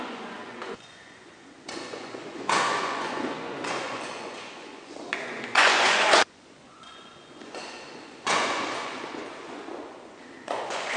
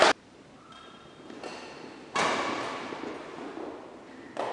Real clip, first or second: second